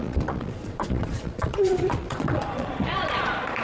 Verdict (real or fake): fake